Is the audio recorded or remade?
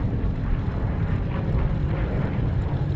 recorded